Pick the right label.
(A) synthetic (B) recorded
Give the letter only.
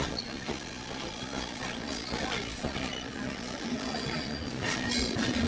A